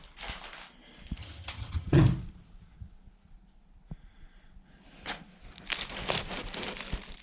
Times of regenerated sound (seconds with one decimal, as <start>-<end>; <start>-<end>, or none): 1.2-2.0